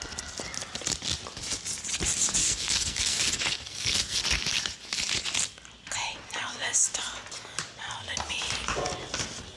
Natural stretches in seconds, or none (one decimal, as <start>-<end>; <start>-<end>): 0.0-2.4; 4.2-9.6